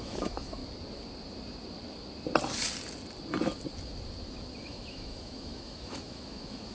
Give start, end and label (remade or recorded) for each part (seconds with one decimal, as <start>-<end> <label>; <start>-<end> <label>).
0.0-0.6 remade; 0.6-4.6 recorded; 4.6-6.7 remade